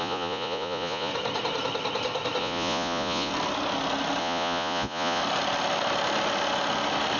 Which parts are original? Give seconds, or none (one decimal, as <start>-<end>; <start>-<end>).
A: 1.1-2.4; 3.3-4.2; 5.2-7.2